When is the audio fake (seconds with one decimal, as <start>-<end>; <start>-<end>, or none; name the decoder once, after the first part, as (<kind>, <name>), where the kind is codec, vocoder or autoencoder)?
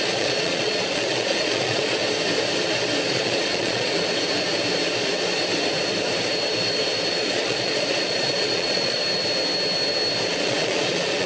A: 0.0-2.0 (vocoder, Vocos); 3.1-4.0; 7.1-9.0; 10.3-11.3